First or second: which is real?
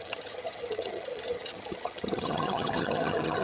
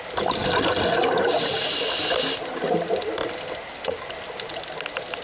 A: second